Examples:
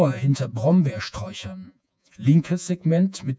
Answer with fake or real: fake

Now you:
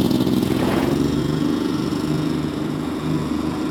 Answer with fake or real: fake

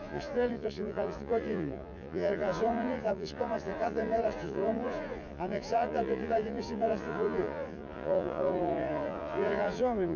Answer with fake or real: fake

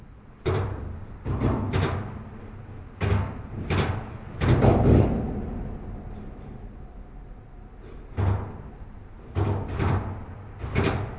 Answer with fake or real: real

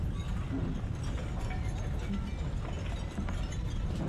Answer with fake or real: real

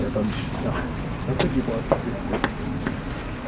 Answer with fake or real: real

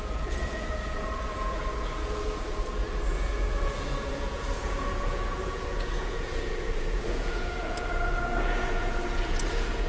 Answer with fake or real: fake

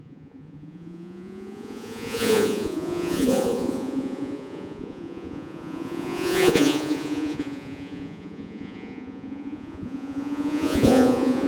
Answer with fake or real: fake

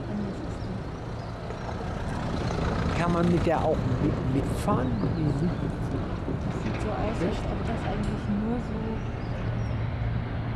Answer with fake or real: real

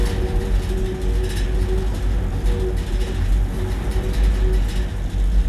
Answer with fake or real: real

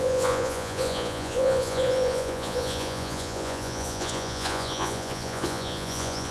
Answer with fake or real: fake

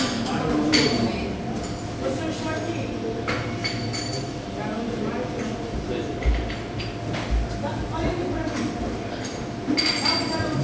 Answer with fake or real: real